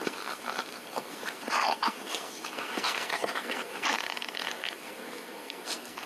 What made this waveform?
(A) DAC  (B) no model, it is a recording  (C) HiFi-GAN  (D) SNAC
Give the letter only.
D